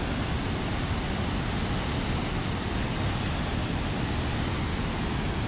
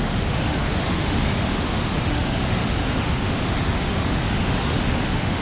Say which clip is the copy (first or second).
second